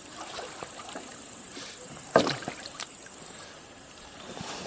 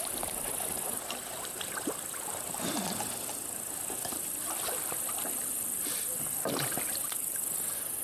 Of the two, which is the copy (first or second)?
first